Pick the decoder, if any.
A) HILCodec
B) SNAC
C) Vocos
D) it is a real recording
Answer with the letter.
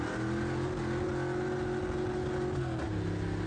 D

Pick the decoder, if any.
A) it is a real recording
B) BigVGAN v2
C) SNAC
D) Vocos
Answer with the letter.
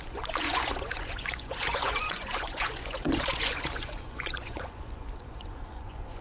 D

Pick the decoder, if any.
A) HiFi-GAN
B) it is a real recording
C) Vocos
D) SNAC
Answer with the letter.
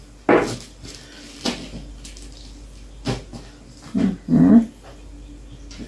B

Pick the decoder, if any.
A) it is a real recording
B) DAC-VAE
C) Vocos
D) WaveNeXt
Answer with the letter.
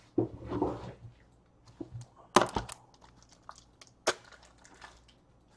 A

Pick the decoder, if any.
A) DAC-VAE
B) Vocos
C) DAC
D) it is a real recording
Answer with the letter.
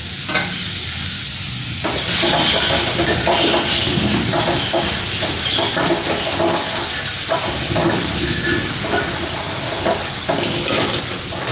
D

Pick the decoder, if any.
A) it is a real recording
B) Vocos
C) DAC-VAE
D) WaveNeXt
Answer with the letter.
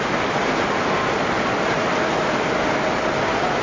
A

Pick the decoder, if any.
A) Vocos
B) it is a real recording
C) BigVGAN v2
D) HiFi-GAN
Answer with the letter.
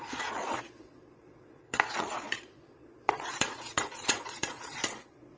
A